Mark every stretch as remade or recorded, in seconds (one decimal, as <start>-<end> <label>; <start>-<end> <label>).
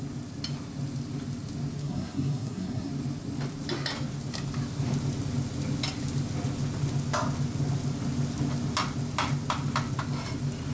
0.0-1.8 recorded; 1.8-2.9 remade; 2.9-10.7 recorded